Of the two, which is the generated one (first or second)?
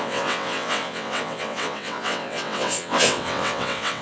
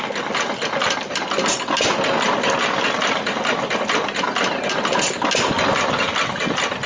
first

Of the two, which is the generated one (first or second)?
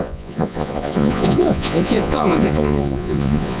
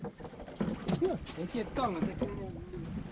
first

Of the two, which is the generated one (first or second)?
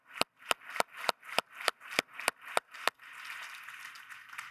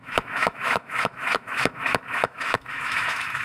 second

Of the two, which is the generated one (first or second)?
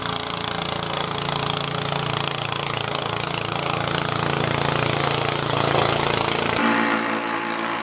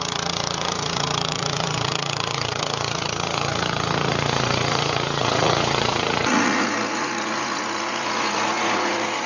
second